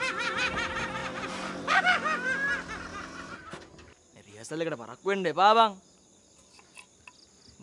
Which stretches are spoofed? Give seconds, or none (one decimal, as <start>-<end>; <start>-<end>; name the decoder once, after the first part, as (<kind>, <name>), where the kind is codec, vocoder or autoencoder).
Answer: 1.0-1.8 (vocoder, BigVGAN v2); 2.9-3.7